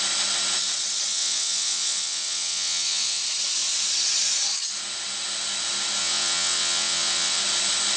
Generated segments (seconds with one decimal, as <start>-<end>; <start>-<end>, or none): 1.1-3.2; 6.0-7.4